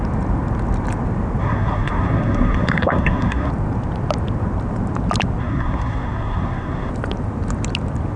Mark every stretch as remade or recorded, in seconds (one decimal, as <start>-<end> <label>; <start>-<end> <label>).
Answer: 0.0-1.4 recorded; 1.4-3.5 remade; 3.5-5.4 recorded; 5.4-6.9 remade; 6.9-8.2 recorded